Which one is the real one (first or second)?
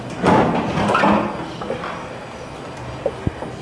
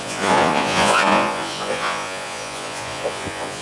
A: first